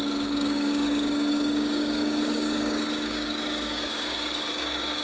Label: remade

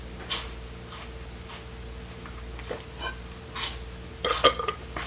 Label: recorded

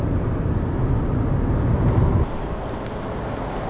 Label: recorded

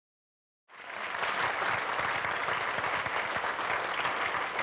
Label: recorded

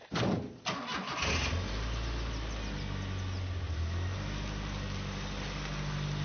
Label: recorded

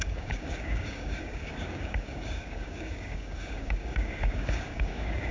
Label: remade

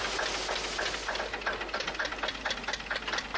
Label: recorded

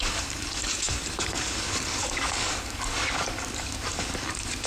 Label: remade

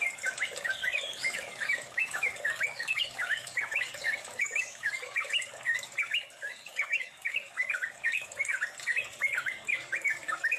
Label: remade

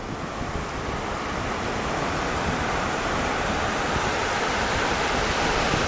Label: recorded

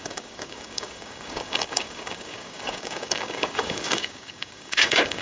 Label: remade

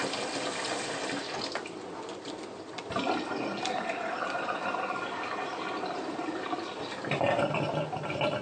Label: recorded